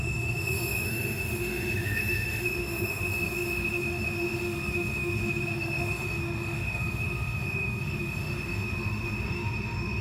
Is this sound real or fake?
fake